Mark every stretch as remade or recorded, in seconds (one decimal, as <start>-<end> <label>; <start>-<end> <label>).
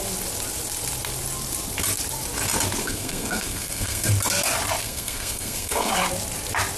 0.0-2.8 recorded; 2.8-4.1 remade; 4.1-4.8 recorded; 4.8-5.9 remade; 5.9-6.8 recorded